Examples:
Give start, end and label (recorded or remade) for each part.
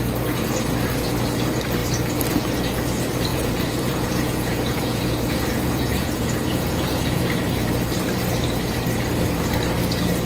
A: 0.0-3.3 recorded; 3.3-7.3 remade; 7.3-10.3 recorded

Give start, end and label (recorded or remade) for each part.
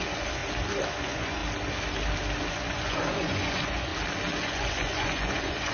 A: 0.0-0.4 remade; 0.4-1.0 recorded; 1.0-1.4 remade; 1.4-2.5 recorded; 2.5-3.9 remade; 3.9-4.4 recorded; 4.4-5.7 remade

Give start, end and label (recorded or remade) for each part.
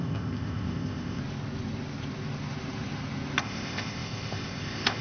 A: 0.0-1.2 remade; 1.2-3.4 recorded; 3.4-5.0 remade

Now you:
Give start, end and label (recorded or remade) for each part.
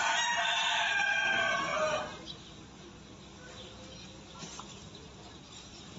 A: 0.0-1.7 remade; 1.7-5.3 recorded; 5.3-6.0 remade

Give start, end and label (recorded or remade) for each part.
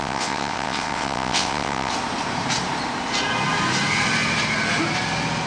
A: 0.0-1.9 remade; 1.9-5.5 recorded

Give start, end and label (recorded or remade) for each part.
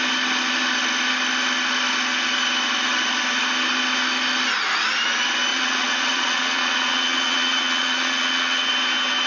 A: 0.0-5.5 recorded; 5.5-8.7 remade; 8.7-9.3 recorded